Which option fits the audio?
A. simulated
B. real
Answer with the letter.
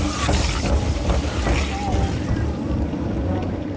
B